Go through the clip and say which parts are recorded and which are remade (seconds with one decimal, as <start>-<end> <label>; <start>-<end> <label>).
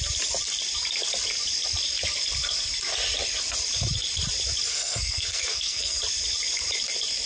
0.0-4.7 recorded; 4.7-6.0 remade; 6.0-7.3 recorded